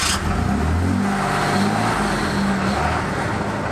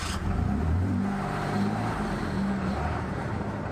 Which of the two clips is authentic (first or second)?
first